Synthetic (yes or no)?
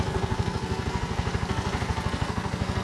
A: yes